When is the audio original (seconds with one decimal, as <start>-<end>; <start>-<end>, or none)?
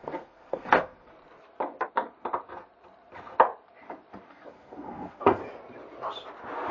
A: 1.1-4.3; 5.4-6.7